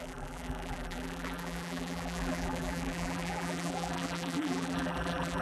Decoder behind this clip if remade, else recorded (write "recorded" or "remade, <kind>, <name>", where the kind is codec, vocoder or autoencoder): remade, vocoder, BigVGAN v2